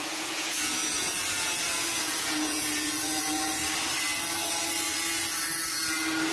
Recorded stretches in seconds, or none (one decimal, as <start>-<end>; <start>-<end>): 3.6-6.3

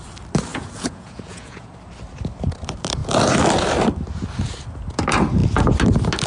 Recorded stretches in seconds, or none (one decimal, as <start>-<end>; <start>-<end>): 0.0-0.5; 1.7-6.3

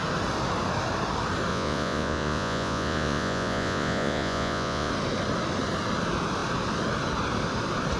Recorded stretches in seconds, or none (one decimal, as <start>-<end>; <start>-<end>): 0.0-1.5; 4.9-8.0

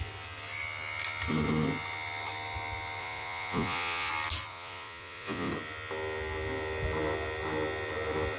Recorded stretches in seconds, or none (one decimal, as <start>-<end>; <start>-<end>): 0.0-3.0; 4.1-4.5; 5.5-8.4